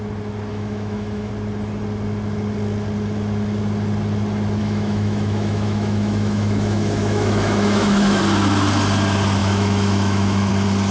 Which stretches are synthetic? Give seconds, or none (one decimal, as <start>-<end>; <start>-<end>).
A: 0.5-1.3; 4.6-8.2; 9.4-10.5